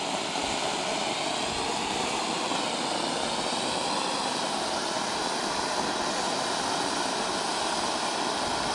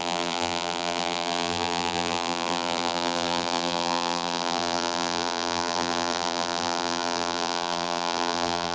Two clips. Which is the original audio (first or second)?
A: first